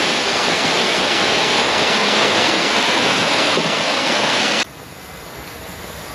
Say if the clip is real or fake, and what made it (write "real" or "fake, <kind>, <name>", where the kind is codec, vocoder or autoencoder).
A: fake, codec, SNAC